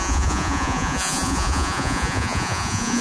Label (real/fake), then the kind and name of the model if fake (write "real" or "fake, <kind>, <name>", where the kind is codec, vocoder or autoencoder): fake, vocoder, Vocos